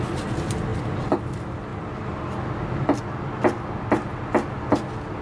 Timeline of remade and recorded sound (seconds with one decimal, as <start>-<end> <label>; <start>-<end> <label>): 0.0-5.2 recorded